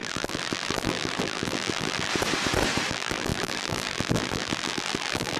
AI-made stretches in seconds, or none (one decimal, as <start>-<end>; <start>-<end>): 0.0-2.1; 2.9-5.4